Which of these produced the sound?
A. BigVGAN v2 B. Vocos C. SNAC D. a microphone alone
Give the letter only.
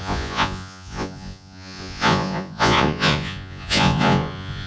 B